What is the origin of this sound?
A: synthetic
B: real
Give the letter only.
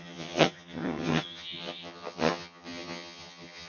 A